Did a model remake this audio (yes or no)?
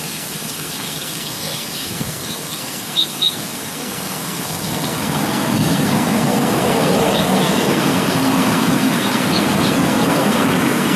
yes